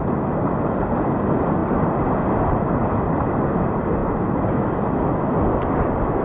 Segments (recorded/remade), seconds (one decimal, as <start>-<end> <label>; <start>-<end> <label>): 0.0-6.2 recorded